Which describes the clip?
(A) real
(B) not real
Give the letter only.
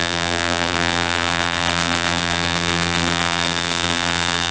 B